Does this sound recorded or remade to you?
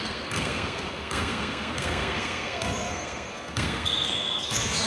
remade